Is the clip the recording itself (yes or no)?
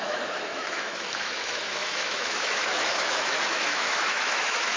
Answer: no